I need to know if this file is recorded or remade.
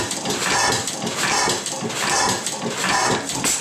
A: recorded